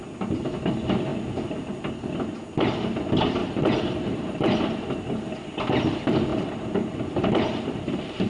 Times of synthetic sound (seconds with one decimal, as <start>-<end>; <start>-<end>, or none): 3.4-5.2; 6.3-8.3